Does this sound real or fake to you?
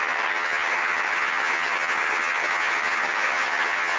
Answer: fake